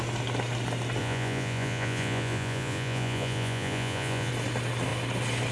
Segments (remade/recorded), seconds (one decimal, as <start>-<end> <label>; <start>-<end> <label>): 0.0-1.0 recorded; 1.0-4.3 remade; 4.3-5.5 recorded